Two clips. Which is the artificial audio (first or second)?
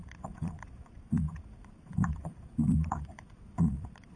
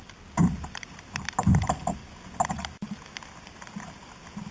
first